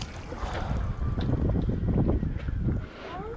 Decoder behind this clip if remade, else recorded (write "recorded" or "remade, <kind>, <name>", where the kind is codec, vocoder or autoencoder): recorded